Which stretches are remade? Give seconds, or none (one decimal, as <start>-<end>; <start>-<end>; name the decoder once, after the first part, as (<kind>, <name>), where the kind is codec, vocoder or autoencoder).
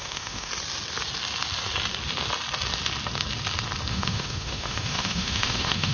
0.0-0.5 (autoencoder, DAC-VAE); 3.9-5.9